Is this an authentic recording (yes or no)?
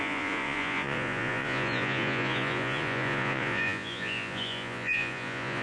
no